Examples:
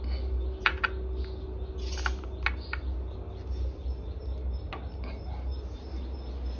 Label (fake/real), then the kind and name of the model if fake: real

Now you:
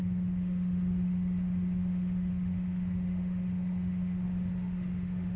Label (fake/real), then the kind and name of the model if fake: fake, autoencoder, DAC-VAE